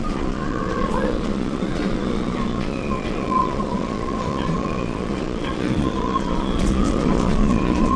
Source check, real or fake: fake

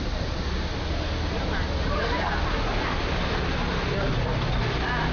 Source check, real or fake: real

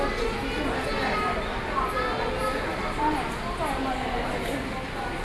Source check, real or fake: real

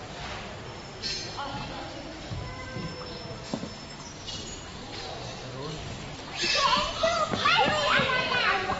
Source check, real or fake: real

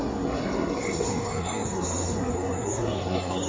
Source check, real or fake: fake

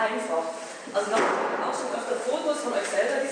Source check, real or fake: real